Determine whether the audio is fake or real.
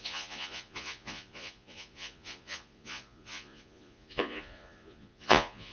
fake